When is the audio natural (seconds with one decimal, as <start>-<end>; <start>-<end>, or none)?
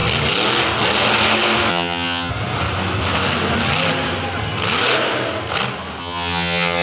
0.0-1.7; 2.3-6.0